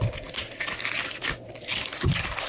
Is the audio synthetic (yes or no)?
no